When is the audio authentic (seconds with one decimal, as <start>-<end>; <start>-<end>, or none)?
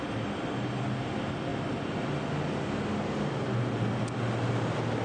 0.0-5.0